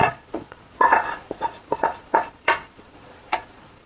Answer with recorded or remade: remade